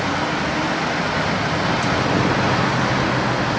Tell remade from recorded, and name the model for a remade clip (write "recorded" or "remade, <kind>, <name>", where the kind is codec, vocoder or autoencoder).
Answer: recorded